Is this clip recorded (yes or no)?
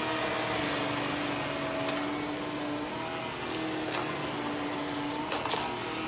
yes